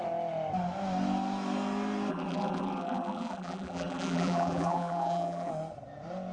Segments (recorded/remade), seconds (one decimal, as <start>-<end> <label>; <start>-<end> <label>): 0.0-2.1 recorded; 2.1-5.5 remade; 5.5-6.3 recorded